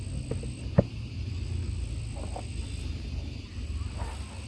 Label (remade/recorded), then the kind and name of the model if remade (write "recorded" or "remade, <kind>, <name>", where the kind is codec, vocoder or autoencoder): recorded